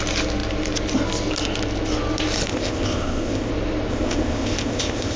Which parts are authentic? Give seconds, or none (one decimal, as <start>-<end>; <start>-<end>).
0.0-2.5; 3.5-3.9

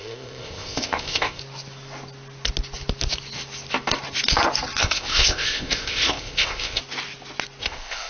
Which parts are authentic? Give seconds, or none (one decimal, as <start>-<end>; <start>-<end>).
1.4-4.8; 6.8-7.6

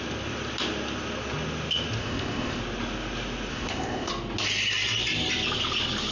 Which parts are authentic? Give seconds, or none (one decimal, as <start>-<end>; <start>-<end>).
0.0-2.0; 2.6-3.5; 4.1-6.1

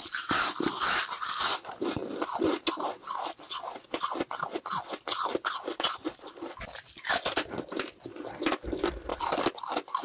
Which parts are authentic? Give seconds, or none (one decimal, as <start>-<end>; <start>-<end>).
0.0-10.0